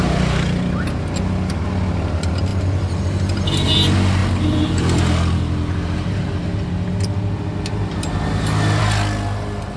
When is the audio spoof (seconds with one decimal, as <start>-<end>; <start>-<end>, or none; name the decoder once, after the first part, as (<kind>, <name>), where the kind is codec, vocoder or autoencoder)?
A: none